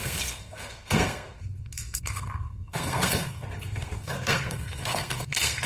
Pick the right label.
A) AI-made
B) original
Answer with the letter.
A